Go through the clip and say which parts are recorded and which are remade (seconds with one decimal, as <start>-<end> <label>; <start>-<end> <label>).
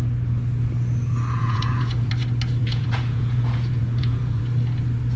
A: 0.0-1.4 recorded; 1.4-2.1 remade; 2.1-2.6 recorded; 2.6-4.4 remade; 4.4-5.2 recorded